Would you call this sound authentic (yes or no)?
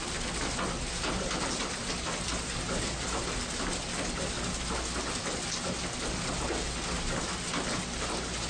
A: yes